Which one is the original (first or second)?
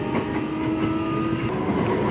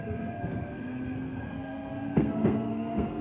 first